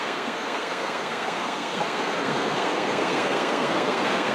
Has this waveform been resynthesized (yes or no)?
yes